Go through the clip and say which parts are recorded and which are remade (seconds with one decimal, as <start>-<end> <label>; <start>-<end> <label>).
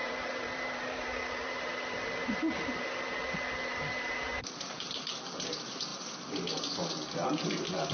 0.0-4.4 remade; 4.4-5.9 recorded; 5.9-6.6 remade; 6.6-7.9 recorded